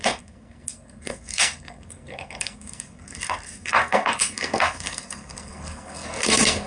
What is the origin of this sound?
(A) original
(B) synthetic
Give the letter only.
B